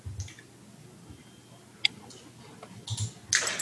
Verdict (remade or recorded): recorded